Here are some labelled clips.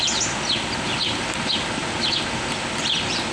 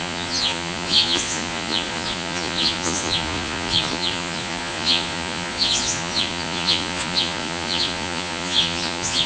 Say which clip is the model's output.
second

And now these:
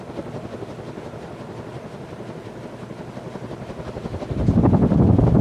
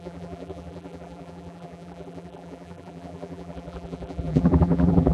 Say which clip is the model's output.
second